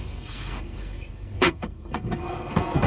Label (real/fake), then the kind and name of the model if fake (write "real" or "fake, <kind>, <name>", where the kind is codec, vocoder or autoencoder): fake, codec, SNAC